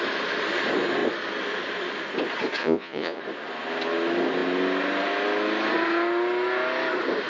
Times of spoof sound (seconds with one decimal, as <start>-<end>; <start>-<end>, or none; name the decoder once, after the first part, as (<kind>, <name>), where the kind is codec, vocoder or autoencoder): 2.6-3.2 (vocoder, Vocos)